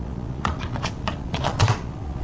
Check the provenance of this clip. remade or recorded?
remade